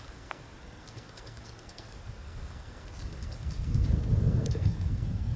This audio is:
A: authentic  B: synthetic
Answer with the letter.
B